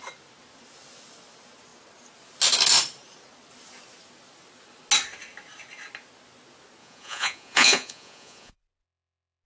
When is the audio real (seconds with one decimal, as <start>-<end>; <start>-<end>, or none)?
0.0-6.8; 8.6-9.5